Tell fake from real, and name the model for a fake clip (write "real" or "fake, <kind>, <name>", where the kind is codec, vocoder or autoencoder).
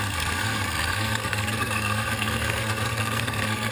fake, codec, SNAC